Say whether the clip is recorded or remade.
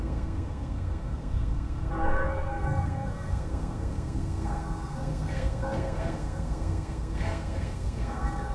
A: remade